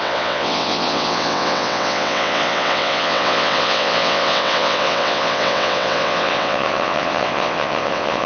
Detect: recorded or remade remade